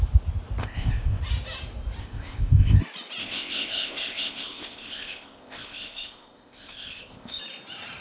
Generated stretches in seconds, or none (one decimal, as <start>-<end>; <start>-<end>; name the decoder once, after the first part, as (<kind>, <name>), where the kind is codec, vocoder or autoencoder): 0.6-1.2 (codec, ZipCodec); 2.0-2.8; 3.2-7.4